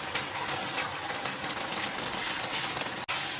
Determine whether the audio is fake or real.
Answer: real